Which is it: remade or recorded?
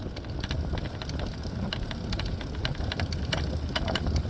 recorded